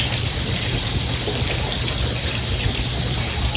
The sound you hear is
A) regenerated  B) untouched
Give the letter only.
B